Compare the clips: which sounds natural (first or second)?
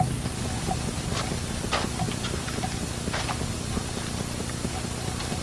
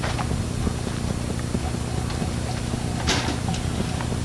second